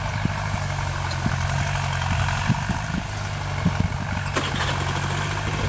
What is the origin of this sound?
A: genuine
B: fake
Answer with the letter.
A